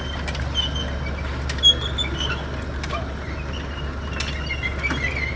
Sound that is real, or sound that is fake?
real